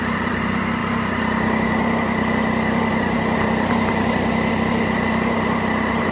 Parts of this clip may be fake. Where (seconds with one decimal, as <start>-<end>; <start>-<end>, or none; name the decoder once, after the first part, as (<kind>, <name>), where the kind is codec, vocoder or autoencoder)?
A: none